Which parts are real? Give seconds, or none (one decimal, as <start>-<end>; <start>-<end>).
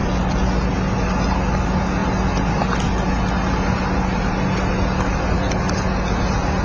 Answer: 0.0-6.6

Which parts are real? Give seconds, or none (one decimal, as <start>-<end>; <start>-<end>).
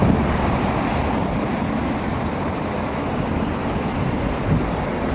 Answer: 0.0-5.1